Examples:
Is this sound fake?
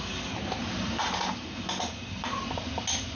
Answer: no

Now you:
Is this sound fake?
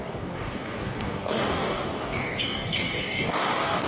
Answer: yes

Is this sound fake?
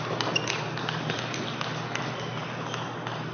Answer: no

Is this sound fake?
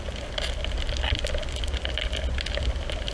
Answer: no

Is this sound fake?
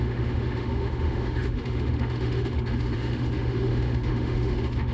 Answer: yes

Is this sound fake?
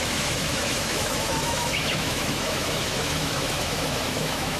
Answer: yes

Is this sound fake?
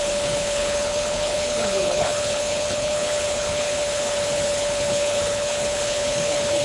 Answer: yes